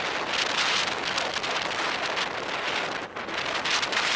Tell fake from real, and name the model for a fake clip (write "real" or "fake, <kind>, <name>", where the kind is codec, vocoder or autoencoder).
real